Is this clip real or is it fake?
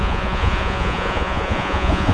fake